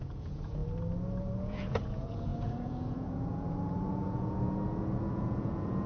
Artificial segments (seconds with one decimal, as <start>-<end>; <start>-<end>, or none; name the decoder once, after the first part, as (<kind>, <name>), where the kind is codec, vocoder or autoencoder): 0.0-0.6 (vocoder, Vocos); 1.2-5.9